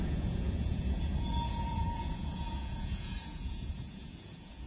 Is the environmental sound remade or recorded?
remade